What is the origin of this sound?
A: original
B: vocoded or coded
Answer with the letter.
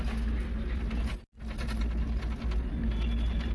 A